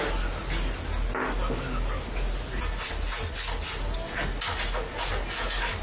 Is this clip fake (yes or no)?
no